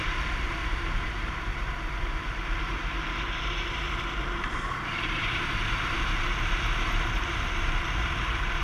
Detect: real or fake fake